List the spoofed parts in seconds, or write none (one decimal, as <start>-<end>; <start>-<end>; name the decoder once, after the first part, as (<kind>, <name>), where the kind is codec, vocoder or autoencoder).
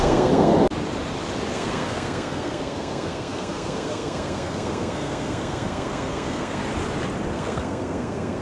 0.0-0.5 (codec, SNAC); 1.5-6.6; 7.3-8.4